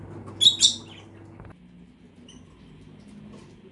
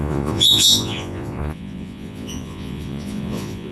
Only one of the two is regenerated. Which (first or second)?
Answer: second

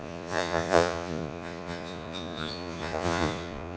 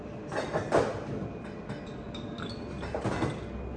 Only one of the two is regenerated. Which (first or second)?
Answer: first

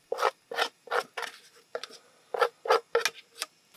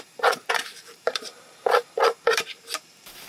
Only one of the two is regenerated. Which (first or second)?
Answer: second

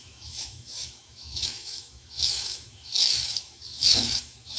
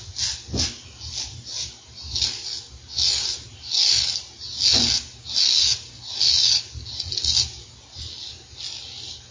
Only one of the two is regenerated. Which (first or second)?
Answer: first